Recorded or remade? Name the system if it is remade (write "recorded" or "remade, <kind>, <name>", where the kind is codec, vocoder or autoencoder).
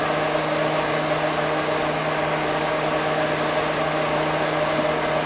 recorded